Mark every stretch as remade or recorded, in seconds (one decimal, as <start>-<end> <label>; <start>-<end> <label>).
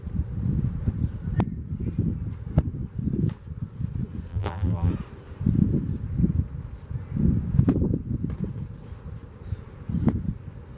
0.0-4.3 recorded; 4.3-4.9 remade; 4.9-10.8 recorded